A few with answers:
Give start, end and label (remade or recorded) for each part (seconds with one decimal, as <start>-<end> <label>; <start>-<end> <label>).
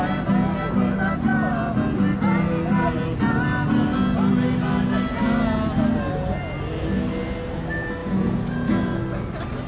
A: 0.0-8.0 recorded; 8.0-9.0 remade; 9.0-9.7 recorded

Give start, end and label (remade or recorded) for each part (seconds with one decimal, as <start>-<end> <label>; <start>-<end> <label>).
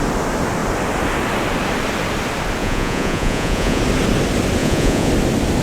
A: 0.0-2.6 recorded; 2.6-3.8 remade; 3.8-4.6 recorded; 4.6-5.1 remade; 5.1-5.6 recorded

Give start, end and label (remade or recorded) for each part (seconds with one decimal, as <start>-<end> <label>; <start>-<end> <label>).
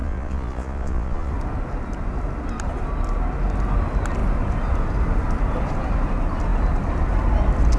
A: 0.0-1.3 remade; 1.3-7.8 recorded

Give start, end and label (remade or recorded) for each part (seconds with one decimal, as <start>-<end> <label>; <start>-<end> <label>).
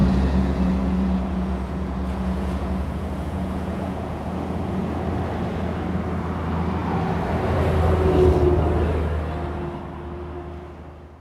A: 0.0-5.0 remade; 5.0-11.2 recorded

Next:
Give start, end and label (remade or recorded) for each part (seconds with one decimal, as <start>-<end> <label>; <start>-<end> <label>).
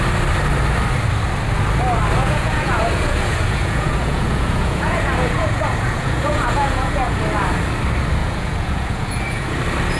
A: 0.0-2.2 recorded; 2.2-7.2 remade; 7.2-8.2 recorded; 8.2-9.5 remade; 9.5-10.0 recorded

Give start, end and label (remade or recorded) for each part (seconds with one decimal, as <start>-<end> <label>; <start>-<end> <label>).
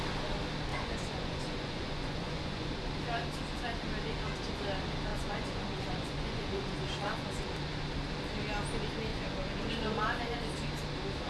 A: 0.0-0.7 recorded; 0.7-2.7 remade; 2.7-5.1 recorded; 5.1-7.5 remade; 7.5-9.1 recorded; 9.1-9.7 remade; 9.7-11.3 recorded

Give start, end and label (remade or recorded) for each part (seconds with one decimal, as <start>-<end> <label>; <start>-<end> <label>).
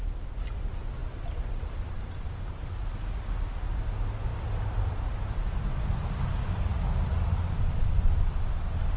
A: 0.0-9.0 recorded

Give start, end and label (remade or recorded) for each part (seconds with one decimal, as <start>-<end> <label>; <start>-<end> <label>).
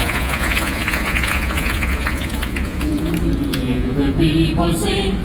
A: 0.0-3.1 remade; 3.1-3.5 recorded; 3.5-4.2 remade; 4.2-5.2 recorded